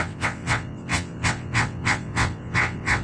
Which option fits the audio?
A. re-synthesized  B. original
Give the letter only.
A